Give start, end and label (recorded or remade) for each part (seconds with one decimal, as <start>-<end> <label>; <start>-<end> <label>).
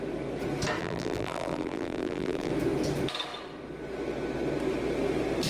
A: 0.0-0.8 recorded; 0.8-2.5 remade; 2.5-5.5 recorded